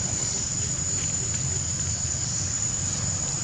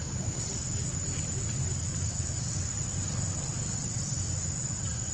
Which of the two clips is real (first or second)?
second